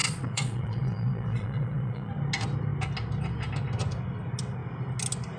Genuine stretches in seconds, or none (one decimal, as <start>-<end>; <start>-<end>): 2.1-5.4